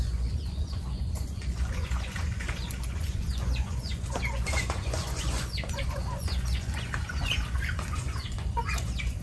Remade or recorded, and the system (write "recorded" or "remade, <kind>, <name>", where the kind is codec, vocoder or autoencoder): remade, vocoder, Vocos